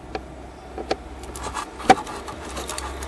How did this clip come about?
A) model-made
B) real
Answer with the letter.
B